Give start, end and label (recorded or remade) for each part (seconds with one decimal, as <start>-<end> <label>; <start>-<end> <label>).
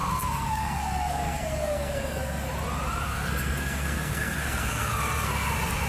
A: 0.0-2.5 remade; 2.5-3.1 recorded; 3.1-5.5 remade; 5.5-5.9 recorded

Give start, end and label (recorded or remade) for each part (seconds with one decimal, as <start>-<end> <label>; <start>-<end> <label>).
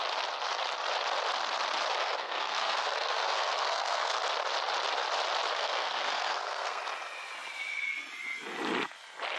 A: 0.0-2.0 recorded; 2.0-4.2 remade; 4.2-5.5 recorded; 5.5-6.8 remade; 6.8-9.4 recorded